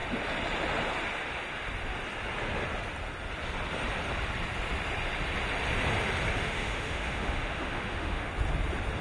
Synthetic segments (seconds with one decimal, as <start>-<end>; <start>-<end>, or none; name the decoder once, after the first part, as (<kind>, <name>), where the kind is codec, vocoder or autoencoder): 6.4-8.3 (autoencoder, DAC-VAE)